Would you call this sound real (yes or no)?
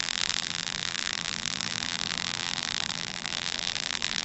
no